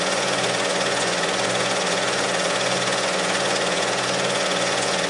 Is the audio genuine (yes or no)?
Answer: no